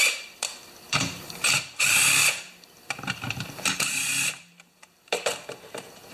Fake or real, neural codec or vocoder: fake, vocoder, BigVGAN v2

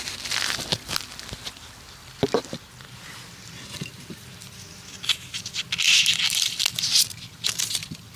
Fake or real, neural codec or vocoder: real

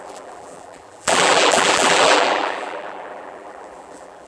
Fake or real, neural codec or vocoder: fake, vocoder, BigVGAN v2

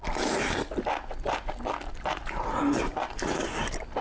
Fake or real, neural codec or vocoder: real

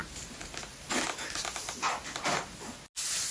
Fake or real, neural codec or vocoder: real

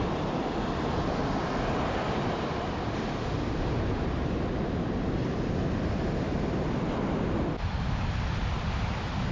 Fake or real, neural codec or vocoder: real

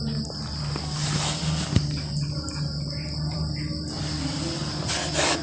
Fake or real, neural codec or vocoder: real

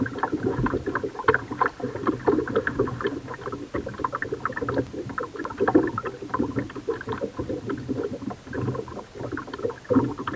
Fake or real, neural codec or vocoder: real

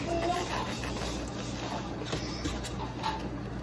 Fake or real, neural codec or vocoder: real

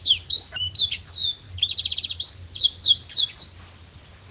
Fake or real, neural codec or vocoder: real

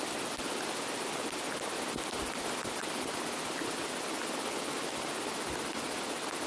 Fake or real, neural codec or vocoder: real